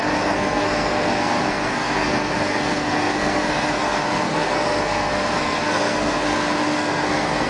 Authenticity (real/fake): fake